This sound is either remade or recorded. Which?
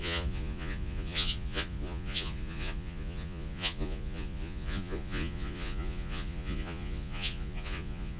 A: remade